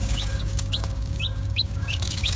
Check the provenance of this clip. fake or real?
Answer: fake